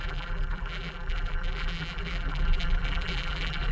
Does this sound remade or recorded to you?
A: remade